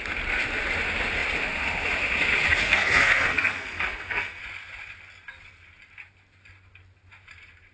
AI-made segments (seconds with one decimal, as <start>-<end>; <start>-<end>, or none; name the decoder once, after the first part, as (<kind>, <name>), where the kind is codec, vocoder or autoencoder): 2.6-4.4 (codec, SNAC)